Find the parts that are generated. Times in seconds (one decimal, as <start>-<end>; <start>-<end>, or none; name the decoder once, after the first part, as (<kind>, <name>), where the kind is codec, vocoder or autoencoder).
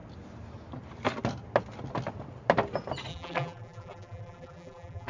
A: 3.1-5.1 (vocoder, BigVGAN v2)